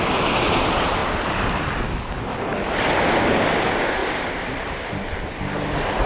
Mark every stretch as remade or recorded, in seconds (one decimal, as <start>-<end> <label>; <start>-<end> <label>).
0.0-1.0 recorded; 1.0-1.8 remade; 1.8-4.0 recorded; 4.0-4.7 remade; 4.7-6.1 recorded